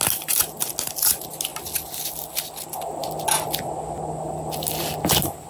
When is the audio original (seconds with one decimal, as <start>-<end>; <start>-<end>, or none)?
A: 0.0-5.5